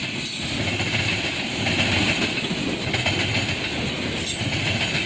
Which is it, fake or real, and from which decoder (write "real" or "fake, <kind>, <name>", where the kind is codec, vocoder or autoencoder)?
real